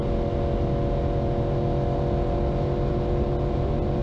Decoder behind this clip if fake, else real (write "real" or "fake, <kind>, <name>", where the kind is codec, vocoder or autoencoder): real